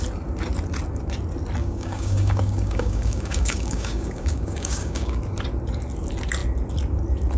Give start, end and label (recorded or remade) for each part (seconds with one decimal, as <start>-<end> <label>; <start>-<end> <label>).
0.0-1.6 recorded; 1.6-5.2 remade; 5.2-7.4 recorded